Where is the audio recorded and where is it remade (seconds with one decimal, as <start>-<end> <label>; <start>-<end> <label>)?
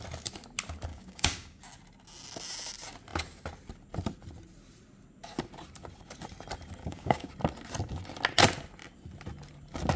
0.0-0.9 recorded; 0.9-1.6 remade; 1.6-6.8 recorded; 6.8-7.3 remade; 7.3-10.0 recorded